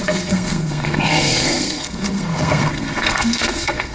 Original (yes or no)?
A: no